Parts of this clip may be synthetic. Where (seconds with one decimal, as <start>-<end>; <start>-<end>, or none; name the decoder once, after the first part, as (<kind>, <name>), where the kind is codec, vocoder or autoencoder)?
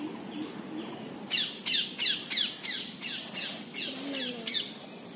none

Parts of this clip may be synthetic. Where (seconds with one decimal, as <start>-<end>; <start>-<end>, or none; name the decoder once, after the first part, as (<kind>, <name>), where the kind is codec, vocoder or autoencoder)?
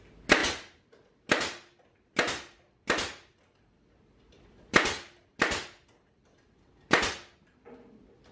none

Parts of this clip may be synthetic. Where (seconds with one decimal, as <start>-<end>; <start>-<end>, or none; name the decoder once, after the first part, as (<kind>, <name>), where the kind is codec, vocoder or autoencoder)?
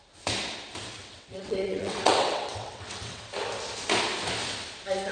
1.0-3.2 (vocoder, WaveNeXt)